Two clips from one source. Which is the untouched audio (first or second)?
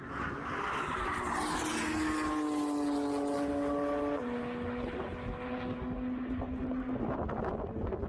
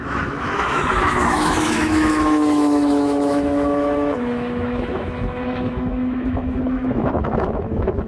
first